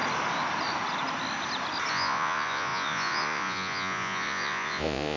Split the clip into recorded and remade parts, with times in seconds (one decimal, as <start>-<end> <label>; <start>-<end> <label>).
0.0-1.9 recorded; 1.9-5.2 remade